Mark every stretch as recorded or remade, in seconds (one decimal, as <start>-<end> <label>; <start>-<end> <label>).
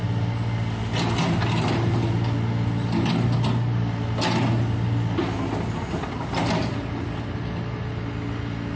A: 0.0-8.8 recorded